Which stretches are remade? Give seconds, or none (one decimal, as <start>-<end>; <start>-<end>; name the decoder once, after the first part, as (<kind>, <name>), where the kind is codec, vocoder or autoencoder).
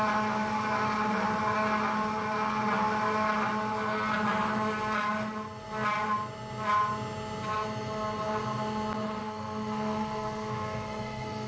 9.2-11.5 (codec, SNAC)